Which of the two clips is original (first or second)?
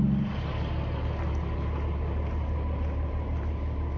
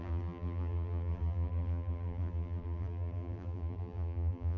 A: first